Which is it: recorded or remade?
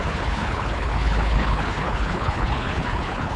remade